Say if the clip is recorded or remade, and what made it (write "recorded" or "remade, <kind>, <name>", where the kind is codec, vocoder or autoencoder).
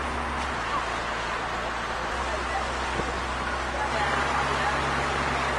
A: recorded